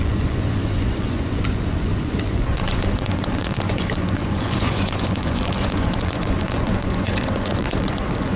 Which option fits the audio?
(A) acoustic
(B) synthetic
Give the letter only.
B